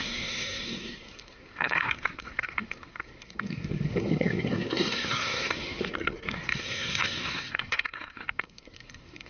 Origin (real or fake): fake